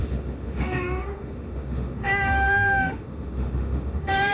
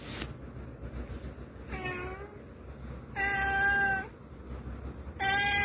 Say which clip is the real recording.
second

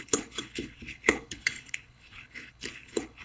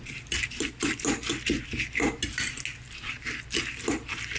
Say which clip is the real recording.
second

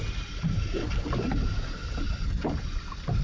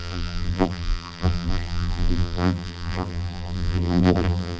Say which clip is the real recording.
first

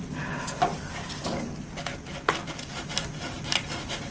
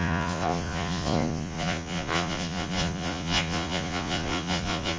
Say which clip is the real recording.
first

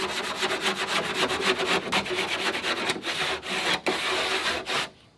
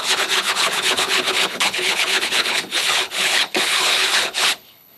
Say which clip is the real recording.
first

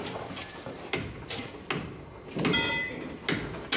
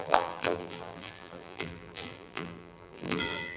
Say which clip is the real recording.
first